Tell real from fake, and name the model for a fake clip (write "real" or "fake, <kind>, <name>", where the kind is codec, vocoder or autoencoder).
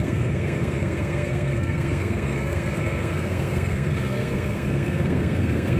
fake, codec, SNAC